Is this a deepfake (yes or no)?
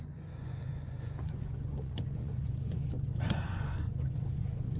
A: yes